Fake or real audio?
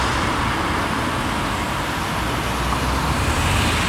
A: real